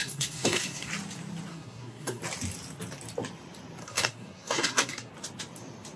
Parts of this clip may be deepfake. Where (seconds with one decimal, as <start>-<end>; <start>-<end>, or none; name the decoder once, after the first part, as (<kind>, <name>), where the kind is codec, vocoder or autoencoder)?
0.0-0.9 (codec, SNAC); 1.5-2.2; 3.8-5.1